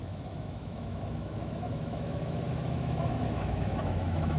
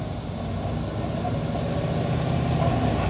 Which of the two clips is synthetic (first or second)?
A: first